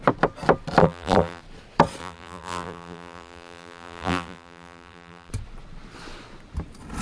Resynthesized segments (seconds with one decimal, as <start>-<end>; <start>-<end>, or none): 0.8-1.4; 2.0-5.3